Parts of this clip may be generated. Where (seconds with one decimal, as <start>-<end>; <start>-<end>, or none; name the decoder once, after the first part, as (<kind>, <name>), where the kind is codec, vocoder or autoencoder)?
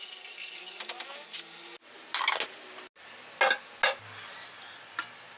none